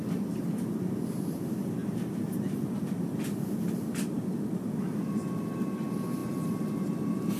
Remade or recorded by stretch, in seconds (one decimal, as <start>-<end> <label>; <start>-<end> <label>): 0.0-7.4 recorded